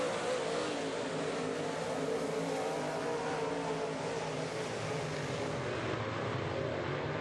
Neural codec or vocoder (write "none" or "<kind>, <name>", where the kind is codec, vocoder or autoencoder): none